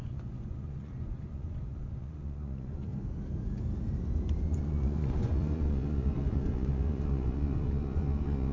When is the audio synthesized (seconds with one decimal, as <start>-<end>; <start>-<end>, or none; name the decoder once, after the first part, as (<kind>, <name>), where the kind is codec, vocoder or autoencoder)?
0.0-2.9 (vocoder, Vocos); 4.4-8.5